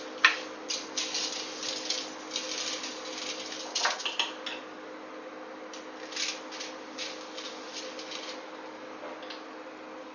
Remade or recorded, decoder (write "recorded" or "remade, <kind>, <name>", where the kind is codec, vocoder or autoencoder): recorded